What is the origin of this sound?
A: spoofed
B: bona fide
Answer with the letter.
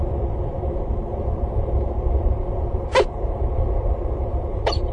A